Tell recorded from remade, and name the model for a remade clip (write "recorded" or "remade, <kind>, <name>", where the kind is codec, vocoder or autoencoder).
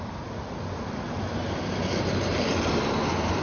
recorded